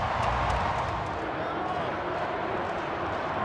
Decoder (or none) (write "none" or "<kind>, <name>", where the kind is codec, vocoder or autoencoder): none